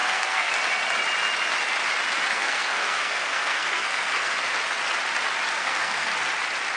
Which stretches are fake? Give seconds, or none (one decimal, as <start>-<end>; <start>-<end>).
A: 0.0-0.5; 2.3-4.4; 5.6-6.1